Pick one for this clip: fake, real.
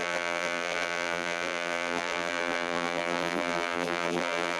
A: fake